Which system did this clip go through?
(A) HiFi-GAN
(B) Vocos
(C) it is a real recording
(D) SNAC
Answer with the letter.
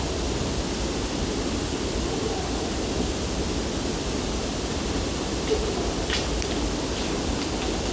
C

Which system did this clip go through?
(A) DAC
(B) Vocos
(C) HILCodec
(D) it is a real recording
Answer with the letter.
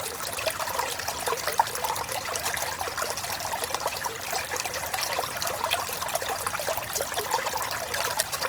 D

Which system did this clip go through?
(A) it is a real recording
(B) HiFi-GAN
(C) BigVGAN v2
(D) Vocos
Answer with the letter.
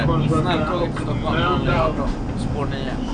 A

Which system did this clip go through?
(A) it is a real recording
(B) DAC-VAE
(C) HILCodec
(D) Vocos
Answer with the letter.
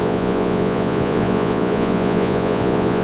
D